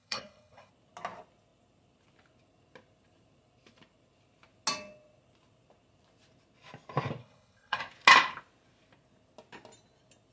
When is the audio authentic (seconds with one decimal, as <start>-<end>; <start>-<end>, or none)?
0.7-7.2; 7.8-10.3